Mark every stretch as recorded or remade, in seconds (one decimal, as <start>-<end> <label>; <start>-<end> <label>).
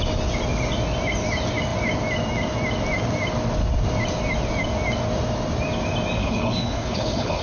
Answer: 0.0-6.2 recorded; 6.2-7.4 remade